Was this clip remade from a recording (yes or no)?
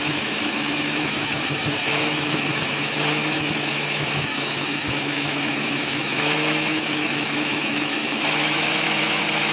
yes